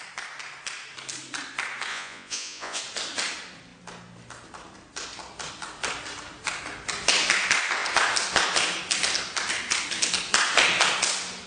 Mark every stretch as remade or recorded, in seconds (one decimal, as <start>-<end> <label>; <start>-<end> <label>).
0.0-1.9 recorded; 1.9-2.8 remade; 2.8-11.5 recorded

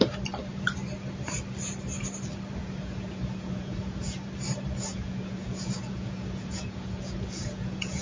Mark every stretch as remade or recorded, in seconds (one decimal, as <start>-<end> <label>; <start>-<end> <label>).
0.0-2.6 recorded; 2.6-4.2 remade; 4.2-4.9 recorded; 4.9-8.0 remade

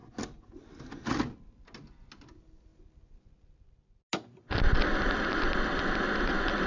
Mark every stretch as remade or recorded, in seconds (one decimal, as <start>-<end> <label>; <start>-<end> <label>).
0.0-6.7 recorded

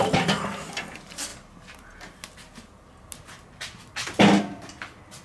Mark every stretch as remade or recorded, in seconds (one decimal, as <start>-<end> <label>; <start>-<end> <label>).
0.0-5.2 recorded